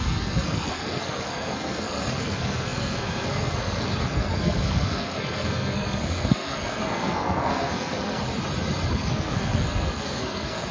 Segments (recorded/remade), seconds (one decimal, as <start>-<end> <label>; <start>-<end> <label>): 0.0-8.3 remade; 8.3-8.9 recorded; 8.9-10.7 remade